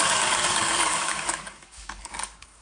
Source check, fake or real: fake